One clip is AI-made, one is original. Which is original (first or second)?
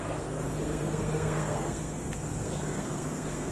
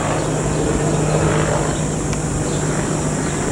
second